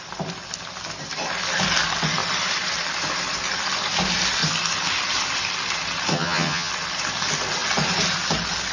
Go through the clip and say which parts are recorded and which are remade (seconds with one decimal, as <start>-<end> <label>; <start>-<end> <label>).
0.0-6.1 recorded; 6.1-6.7 remade; 6.7-8.7 recorded